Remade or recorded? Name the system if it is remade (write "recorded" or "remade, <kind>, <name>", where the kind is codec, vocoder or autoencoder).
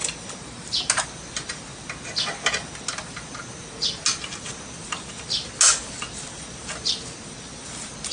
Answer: recorded